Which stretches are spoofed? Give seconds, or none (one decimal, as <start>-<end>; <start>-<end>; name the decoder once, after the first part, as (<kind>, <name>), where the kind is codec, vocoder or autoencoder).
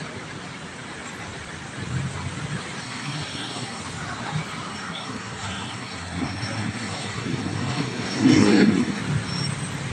2.8-3.8 (codec, SNAC); 4.7-9.0